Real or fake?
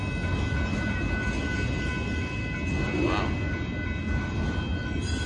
real